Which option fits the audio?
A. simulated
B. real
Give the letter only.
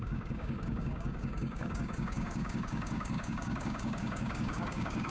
A